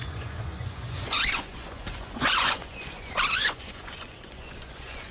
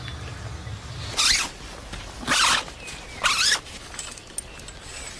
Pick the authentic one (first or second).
second